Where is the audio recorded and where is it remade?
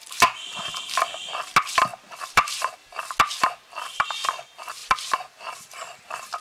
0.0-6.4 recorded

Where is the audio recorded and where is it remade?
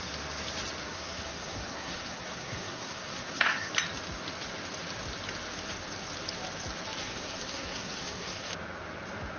0.0-0.8 recorded; 0.8-3.7 remade; 3.7-7.0 recorded; 7.0-8.5 remade; 8.5-9.4 recorded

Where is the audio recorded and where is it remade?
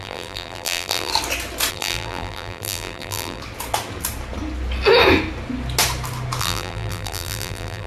0.0-1.1 remade; 1.1-1.7 recorded; 1.7-3.4 remade; 3.4-6.4 recorded; 6.4-7.9 remade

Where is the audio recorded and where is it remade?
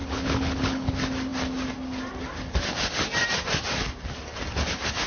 0.0-0.9 remade; 0.9-5.1 recorded